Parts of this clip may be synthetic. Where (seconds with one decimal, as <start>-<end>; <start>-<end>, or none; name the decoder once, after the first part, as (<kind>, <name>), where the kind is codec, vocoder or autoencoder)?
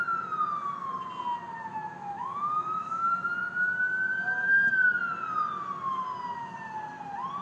1.7-3.1 (autoencoder, DAC-VAE)